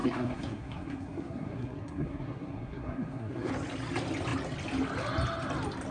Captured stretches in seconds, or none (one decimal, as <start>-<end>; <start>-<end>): 3.5-5.9

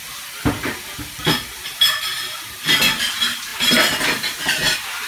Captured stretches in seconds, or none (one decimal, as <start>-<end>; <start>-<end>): 0.0-5.1

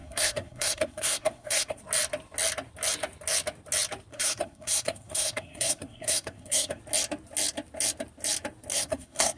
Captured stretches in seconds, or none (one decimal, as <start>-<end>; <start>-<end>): 1.8-4.1; 6.8-8.7

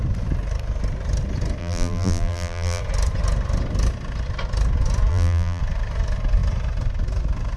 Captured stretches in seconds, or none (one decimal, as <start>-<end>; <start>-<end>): 0.0-1.6; 2.8-5.1; 5.6-7.6

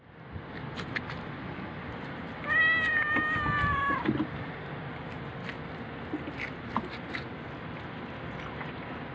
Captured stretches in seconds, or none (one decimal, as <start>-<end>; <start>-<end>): 0.0-9.1

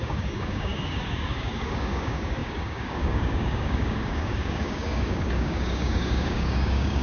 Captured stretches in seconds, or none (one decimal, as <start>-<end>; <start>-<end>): none

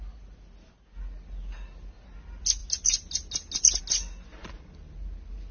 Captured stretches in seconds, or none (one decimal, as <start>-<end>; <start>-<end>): 0.0-5.5